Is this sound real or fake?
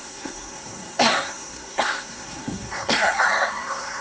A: fake